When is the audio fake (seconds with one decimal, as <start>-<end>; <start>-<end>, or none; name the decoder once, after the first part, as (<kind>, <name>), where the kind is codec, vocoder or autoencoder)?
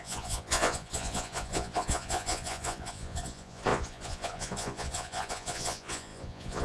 0.0-6.6 (vocoder, Vocos)